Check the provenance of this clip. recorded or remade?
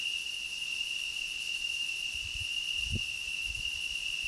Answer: remade